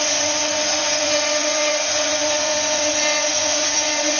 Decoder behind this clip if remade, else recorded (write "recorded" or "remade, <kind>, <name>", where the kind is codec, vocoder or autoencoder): remade, vocoder, Vocos